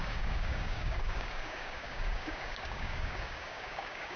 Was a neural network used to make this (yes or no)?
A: yes